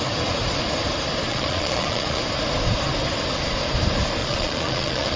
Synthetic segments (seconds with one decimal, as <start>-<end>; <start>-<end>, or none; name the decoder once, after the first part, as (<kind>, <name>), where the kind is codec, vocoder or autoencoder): 1.3-2.2 (vocoder, Vocos); 4.2-5.2